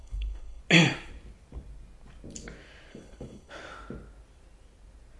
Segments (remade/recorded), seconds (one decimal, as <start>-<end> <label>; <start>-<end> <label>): 0.0-0.6 remade; 0.6-2.9 recorded; 2.9-3.5 remade; 3.5-5.2 recorded